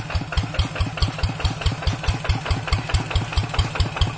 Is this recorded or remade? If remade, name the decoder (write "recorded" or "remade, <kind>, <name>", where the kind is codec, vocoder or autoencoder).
recorded